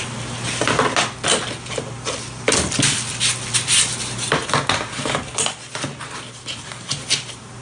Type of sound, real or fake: real